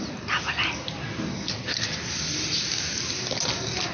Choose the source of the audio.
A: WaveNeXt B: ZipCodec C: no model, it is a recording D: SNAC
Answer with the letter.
C